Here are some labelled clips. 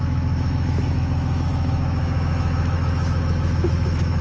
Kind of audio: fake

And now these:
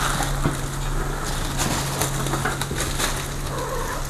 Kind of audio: real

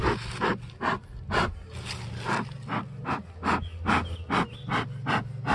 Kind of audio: real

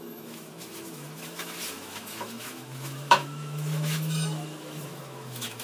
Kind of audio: fake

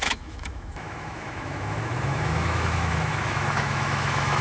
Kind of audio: fake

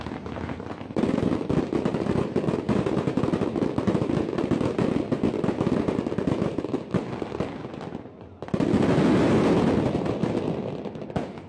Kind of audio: real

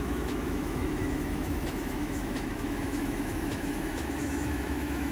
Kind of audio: fake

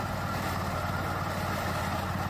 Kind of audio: real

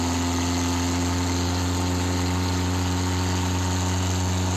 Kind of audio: real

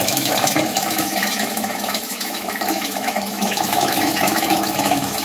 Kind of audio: fake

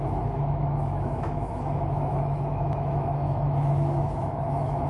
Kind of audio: fake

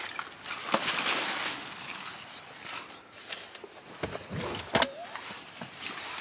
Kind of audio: real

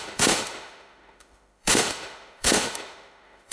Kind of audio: fake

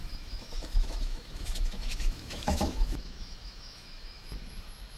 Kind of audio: fake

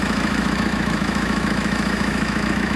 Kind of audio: fake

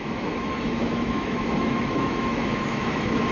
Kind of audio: fake